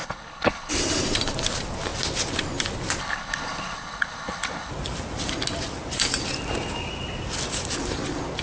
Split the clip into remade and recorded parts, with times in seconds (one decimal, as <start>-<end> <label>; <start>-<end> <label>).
0.0-0.7 remade; 0.7-3.0 recorded; 3.0-4.7 remade; 4.7-8.4 recorded